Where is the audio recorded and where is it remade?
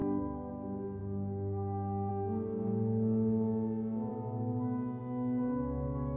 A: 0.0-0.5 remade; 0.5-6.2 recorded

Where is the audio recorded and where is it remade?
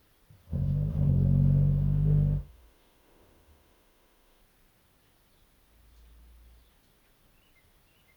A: 0.0-0.5 recorded; 0.5-4.4 remade; 4.4-8.2 recorded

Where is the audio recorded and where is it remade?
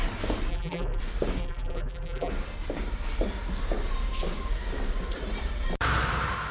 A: 0.0-0.5 recorded; 0.5-1.0 remade; 1.0-1.4 recorded; 1.4-2.3 remade; 2.3-6.5 recorded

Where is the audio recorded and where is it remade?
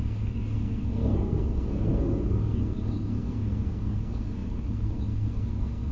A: 0.0-5.9 remade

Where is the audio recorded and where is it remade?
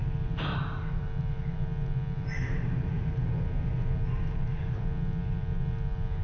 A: 0.0-6.2 recorded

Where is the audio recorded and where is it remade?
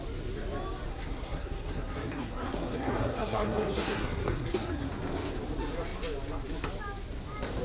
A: 0.0-0.9 recorded; 0.9-4.9 remade; 4.9-7.6 recorded